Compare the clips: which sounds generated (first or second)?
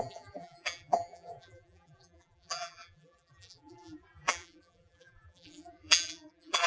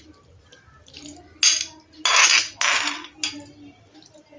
first